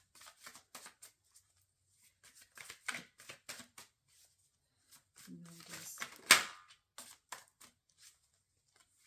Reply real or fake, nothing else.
real